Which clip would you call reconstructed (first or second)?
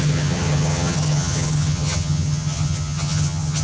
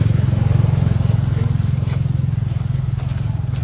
first